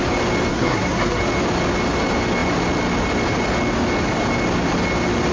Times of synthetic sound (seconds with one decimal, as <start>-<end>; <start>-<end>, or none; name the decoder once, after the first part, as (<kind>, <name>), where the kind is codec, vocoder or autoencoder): 0.5-1.2 (codec, SNAC)